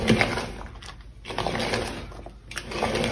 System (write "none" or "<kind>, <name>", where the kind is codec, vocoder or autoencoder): none